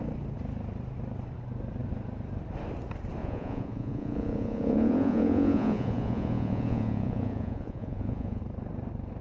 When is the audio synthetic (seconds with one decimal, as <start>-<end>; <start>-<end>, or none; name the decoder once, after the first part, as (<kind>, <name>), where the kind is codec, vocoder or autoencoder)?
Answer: 3.2-8.4 (vocoder, Vocos)